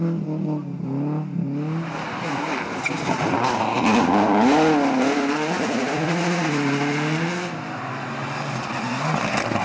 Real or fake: real